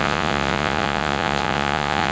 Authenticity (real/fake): fake